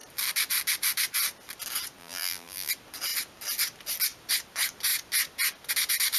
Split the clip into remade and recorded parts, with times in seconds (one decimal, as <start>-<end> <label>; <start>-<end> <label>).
0.0-2.0 recorded; 2.0-2.7 remade; 2.7-6.2 recorded